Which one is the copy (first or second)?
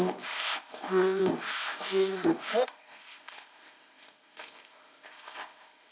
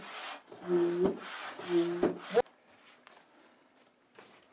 first